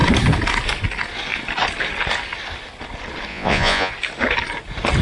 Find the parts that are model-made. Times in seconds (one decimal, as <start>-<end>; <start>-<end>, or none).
3.3-3.9